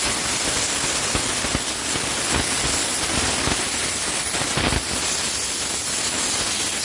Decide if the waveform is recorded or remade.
recorded